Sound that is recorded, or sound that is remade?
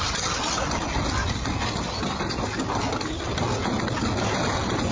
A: recorded